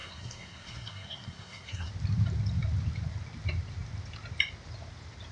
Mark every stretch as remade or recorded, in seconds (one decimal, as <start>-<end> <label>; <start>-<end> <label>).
0.0-1.9 remade; 1.9-5.3 recorded